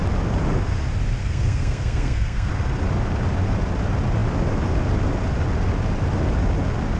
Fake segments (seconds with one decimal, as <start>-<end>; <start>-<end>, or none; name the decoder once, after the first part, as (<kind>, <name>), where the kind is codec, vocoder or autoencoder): 1.2-2.5 (codec, SNAC)

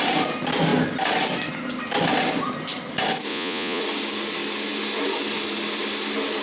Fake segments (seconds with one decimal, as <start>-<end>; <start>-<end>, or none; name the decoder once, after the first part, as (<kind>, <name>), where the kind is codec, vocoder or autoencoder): 3.3-3.8 (vocoder, Vocos)

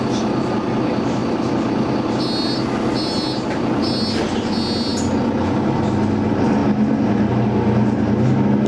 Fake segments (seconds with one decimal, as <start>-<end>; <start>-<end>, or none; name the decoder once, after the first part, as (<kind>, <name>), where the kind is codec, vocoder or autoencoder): none

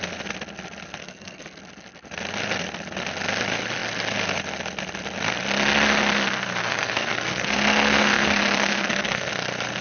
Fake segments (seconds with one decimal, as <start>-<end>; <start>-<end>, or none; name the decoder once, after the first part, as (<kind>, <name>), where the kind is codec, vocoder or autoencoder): 1.0-1.6 (codec, SNAC); 6.6-9.3

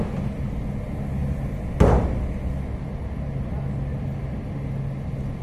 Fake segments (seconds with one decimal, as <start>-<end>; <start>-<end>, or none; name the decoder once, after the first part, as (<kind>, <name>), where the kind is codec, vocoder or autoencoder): none

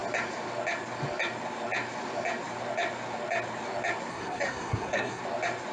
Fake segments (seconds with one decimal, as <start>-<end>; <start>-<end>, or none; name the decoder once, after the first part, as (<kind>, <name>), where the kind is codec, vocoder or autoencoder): 4.1-5.2 (codec, SNAC)

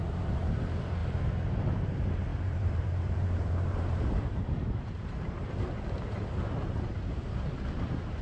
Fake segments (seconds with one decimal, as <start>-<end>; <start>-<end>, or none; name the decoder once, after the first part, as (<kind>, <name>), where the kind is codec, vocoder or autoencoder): 0.0-1.0 (vocoder, BigVGAN v2); 1.5-8.2

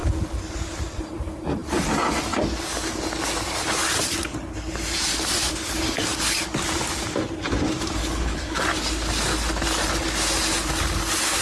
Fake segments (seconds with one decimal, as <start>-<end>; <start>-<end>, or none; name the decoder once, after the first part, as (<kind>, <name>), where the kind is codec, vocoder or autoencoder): 8.0-8.6 (codec, HILCodec)